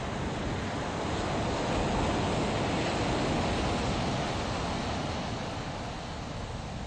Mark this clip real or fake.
real